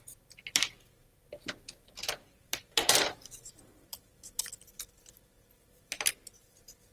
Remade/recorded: remade